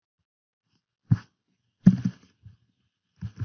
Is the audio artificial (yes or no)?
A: no